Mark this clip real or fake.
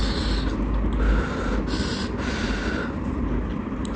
real